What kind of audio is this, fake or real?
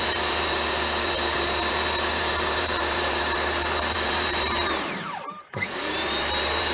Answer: fake